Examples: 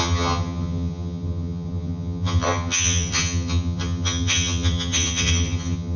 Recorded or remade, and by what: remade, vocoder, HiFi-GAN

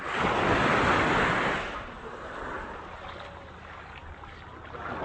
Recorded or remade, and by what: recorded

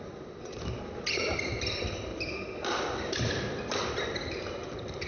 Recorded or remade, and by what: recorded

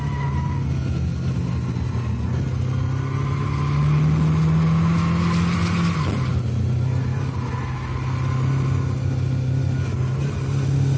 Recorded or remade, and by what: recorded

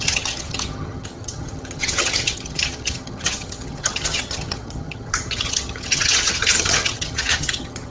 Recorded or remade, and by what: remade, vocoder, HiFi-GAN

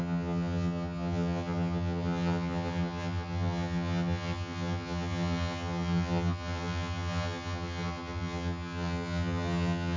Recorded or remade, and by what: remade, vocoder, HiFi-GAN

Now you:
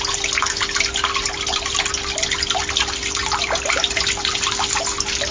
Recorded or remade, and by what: recorded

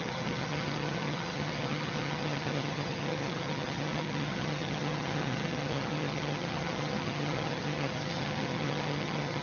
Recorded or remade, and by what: remade, vocoder, HiFi-GAN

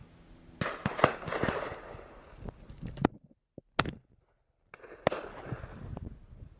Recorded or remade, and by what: recorded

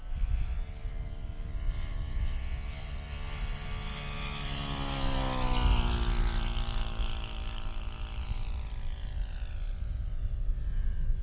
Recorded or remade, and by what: recorded